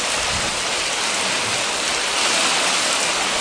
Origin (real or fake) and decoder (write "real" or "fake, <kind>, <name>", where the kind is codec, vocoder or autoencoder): real